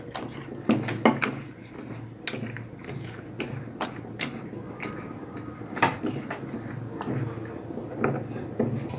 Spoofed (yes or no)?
no